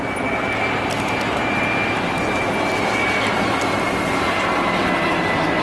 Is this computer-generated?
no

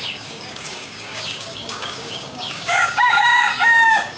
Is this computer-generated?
yes